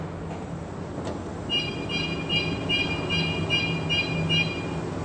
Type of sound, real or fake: real